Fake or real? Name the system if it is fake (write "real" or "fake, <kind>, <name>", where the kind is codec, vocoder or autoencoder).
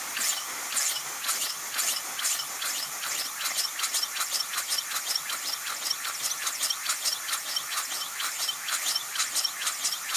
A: real